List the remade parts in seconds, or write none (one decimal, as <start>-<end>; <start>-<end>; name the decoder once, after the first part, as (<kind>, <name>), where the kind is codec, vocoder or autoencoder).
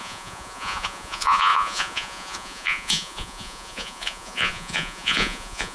0.0-5.7 (vocoder, Vocos)